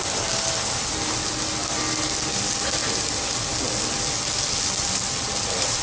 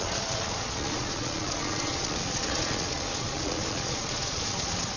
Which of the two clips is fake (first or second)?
second